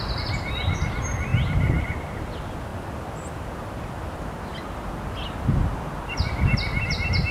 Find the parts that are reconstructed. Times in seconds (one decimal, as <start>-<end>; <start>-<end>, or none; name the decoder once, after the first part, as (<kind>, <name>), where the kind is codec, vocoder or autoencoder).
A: none